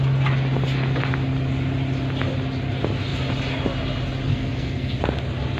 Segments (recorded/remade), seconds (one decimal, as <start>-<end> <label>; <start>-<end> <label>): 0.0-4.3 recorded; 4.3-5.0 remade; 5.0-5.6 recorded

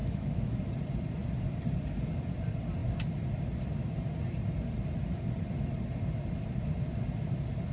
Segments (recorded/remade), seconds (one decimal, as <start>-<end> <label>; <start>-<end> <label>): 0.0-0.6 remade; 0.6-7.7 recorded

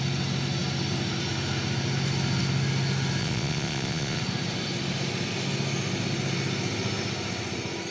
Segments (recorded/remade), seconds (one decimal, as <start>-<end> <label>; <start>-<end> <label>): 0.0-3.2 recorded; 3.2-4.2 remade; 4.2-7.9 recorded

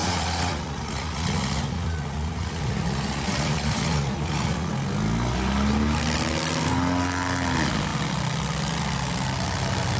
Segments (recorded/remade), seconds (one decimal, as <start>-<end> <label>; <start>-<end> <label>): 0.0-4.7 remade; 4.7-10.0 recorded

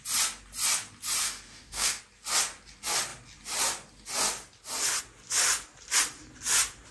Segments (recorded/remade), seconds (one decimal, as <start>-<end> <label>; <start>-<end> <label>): 0.0-1.2 recorded; 1.2-2.0 remade; 2.0-6.9 recorded

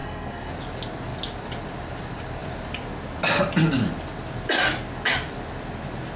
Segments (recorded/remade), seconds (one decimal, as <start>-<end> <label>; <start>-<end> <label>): 0.0-0.5 remade; 0.5-6.2 recorded

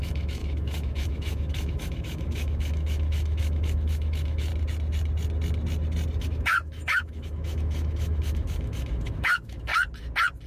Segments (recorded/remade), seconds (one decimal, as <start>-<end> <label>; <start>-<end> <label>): 0.0-4.5 remade; 4.5-6.2 recorded; 6.2-9.7 remade; 9.7-10.5 recorded